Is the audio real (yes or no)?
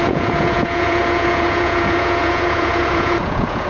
no